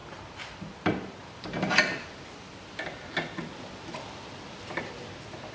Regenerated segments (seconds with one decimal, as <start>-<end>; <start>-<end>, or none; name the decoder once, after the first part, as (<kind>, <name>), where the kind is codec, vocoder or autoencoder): 0.0-3.1 (vocoder, BigVGAN v2)